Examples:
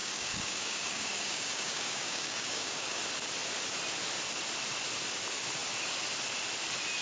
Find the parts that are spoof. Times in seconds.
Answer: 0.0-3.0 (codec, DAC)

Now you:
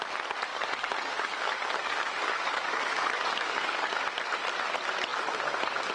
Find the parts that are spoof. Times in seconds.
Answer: 0.5-4.0 (codec, DAC)

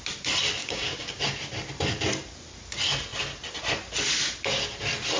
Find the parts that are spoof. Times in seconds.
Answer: 0.6-1.2 (codec, DAC)